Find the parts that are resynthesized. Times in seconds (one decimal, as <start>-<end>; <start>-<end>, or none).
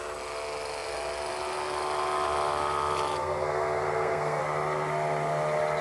3.2-4.4